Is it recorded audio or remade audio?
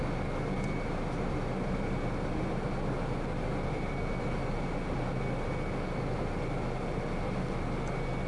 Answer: recorded